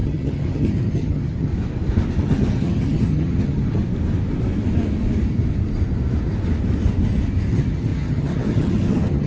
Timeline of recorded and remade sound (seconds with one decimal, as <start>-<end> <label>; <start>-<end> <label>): 0.0-1.5 remade; 1.5-2.2 recorded; 2.2-3.8 remade; 3.8-7.5 recorded; 7.5-9.3 remade